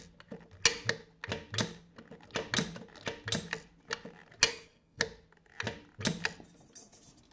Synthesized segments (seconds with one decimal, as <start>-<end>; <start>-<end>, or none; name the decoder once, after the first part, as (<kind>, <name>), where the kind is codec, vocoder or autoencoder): 4.5-5.0 (codec, SNAC)